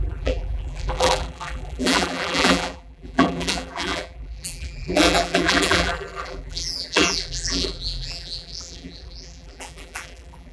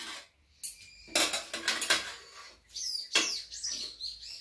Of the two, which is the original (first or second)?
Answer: second